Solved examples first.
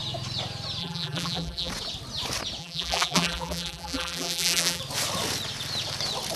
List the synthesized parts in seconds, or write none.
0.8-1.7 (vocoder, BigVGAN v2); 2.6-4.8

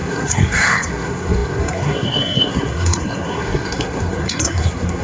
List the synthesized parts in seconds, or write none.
0.0-5.0 (codec, SNAC)

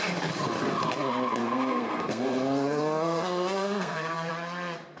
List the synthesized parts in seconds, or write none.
1.4-4.3 (codec, SNAC)

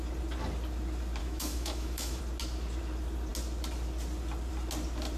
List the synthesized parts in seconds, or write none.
1.2-2.2 (autoencoder, DAC-VAE)

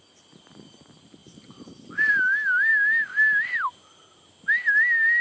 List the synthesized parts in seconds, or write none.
1.2-2.1 (vocoder, BigVGAN v2)

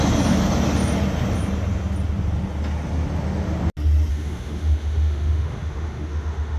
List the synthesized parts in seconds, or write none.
4.1-6.6 (autoencoder, DAC-VAE)